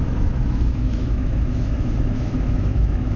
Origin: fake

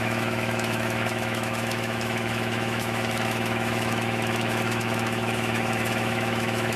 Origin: fake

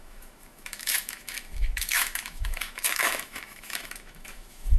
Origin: fake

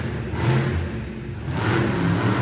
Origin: real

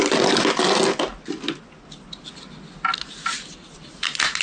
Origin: real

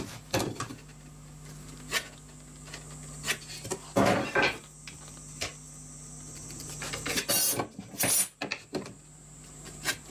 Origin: real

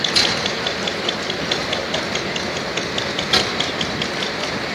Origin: real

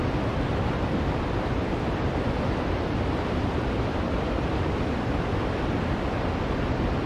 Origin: real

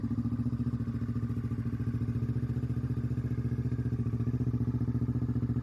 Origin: real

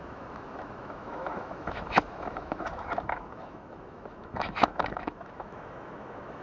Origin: fake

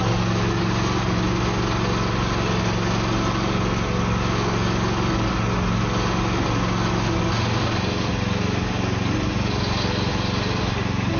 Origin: real